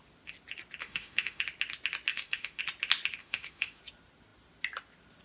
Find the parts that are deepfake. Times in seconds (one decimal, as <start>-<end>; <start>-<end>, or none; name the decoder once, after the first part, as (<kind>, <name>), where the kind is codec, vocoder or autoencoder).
0.8-1.4 (autoencoder, DAC-VAE); 2.1-2.6; 3.2-3.8